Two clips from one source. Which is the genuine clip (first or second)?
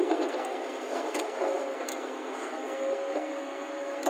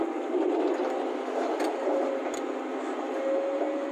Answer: second